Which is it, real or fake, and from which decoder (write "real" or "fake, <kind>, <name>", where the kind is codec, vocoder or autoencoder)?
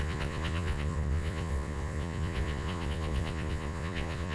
fake, vocoder, Vocos